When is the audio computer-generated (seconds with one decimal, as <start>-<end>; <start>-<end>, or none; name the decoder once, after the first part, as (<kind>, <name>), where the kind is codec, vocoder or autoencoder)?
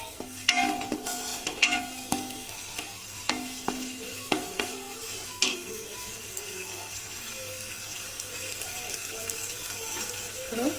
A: 0.0-10.8 (codec, SNAC)